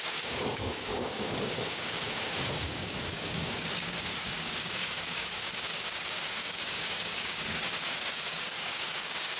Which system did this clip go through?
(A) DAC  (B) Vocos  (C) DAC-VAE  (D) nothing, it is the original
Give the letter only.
A